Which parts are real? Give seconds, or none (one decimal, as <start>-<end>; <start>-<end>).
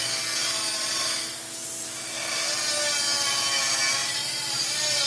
0.0-5.1